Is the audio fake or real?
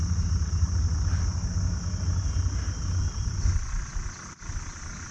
real